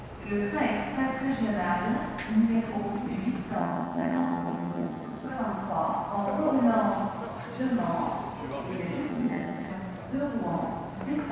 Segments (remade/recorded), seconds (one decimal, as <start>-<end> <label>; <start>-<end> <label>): 0.0-3.6 recorded; 3.6-5.3 remade; 5.3-9.1 recorded; 9.1-9.7 remade; 9.7-11.3 recorded